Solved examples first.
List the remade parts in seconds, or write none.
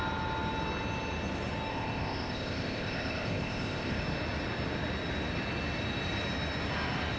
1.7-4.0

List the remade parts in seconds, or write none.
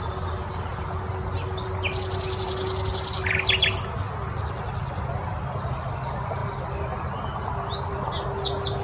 none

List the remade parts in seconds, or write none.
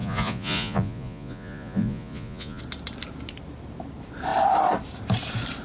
0.0-2.6